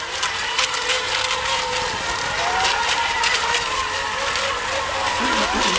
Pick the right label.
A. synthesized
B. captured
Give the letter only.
B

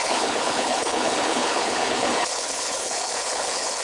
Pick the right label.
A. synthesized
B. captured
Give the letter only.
A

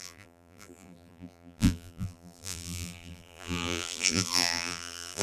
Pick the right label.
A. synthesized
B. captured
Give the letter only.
A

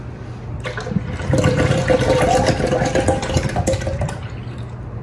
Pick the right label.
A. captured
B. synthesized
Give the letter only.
A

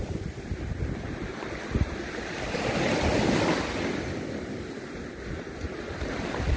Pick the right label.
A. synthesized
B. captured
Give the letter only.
B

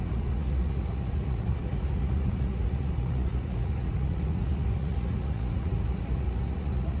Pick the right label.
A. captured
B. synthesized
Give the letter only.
B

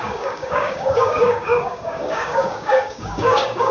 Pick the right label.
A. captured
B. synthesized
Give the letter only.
B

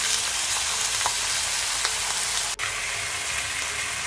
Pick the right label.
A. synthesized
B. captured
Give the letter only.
B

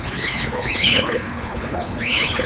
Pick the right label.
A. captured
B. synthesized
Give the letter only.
B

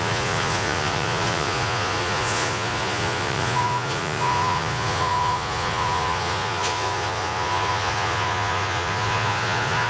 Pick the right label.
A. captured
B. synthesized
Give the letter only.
B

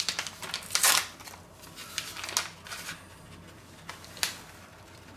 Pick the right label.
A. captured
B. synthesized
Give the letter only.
A